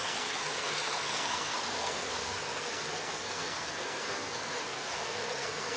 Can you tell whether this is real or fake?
fake